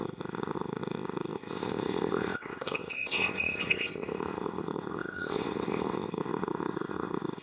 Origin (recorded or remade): remade